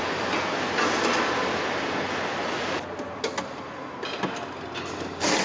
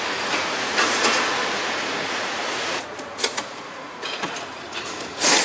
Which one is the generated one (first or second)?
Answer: second